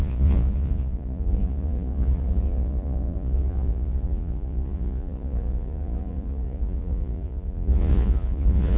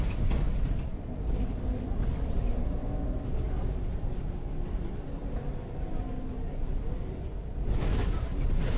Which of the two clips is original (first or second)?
second